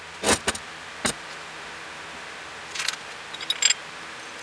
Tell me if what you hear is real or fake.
real